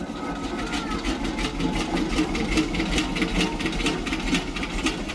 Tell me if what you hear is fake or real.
real